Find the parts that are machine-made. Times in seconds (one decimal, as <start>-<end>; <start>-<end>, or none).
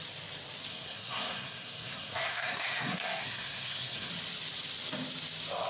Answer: 0.7-4.1